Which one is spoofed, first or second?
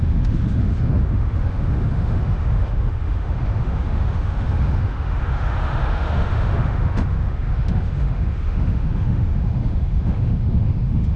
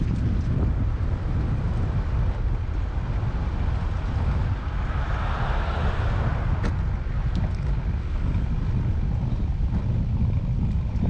first